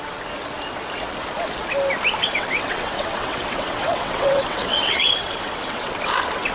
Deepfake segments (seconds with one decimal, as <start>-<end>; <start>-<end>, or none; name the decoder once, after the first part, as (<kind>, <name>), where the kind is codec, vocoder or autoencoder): 2.2-6.1 (vocoder, WaveNeXt)